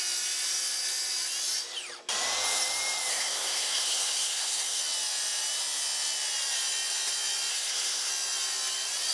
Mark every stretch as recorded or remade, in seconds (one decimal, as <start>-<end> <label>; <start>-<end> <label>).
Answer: 0.0-3.1 recorded; 3.1-4.8 remade; 4.8-7.5 recorded; 7.5-8.1 remade; 8.1-9.1 recorded